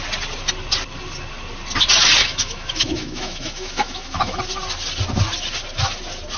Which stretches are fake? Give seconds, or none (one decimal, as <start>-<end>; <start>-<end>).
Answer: 2.2-4.4

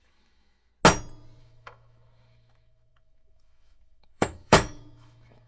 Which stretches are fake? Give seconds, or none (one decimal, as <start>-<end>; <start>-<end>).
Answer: 0.0-0.7; 1.4-5.5

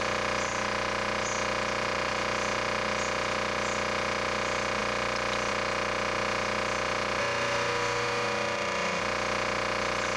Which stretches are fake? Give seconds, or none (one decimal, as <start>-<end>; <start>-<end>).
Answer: 7.2-9.0

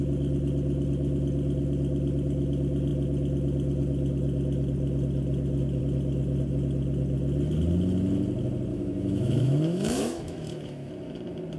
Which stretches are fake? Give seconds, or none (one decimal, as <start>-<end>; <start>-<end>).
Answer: 8.7-10.9

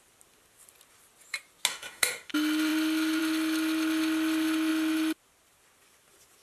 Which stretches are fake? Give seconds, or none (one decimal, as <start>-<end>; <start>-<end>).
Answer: 1.7-2.3

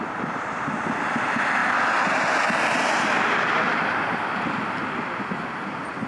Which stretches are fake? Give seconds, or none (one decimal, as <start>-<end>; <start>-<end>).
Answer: none

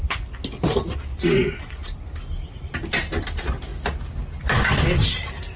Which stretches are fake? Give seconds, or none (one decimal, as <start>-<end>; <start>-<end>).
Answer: none

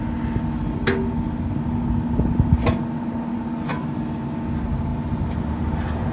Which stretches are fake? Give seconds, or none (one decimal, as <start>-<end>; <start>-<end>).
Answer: none